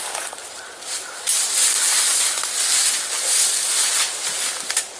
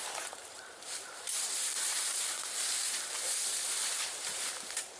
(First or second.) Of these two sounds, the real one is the first